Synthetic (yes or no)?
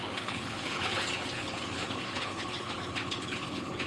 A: yes